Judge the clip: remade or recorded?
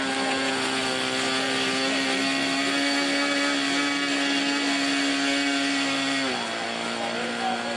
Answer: recorded